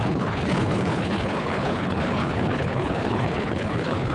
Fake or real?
fake